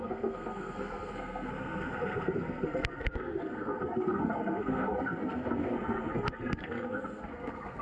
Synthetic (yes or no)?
yes